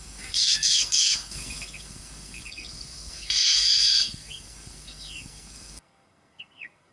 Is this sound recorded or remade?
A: remade